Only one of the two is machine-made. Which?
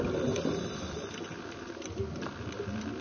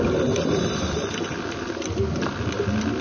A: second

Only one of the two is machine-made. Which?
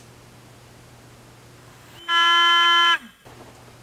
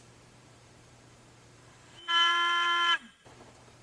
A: second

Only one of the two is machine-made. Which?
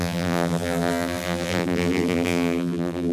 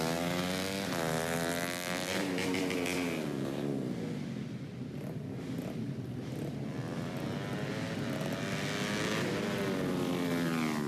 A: first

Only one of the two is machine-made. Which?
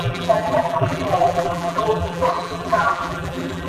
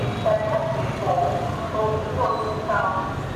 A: first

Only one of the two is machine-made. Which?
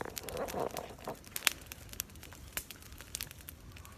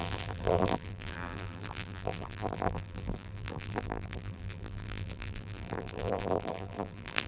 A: second